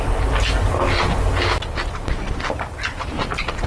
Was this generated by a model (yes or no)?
no